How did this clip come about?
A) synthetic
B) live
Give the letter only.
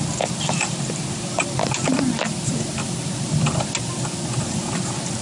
B